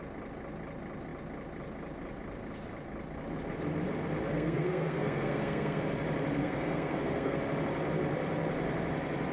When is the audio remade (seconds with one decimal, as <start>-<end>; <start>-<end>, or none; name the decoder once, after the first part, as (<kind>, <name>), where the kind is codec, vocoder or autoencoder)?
4.3-5.8 (codec, SNAC); 6.4-7.4